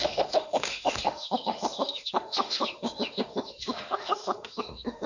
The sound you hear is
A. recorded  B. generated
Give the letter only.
B